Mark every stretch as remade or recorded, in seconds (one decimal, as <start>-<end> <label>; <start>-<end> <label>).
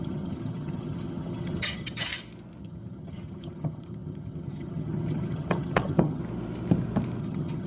0.0-2.1 remade; 2.1-2.6 recorded; 2.6-6.2 remade; 6.2-7.2 recorded; 7.2-7.7 remade